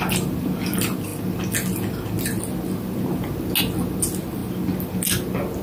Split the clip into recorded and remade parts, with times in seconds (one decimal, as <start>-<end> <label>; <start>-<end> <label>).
0.0-5.6 recorded